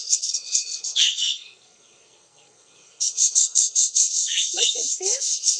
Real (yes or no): no